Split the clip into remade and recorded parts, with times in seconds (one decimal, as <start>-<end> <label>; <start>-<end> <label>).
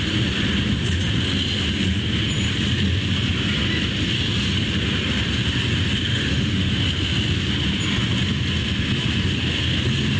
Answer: 0.0-6.1 recorded; 6.1-6.7 remade; 6.7-10.2 recorded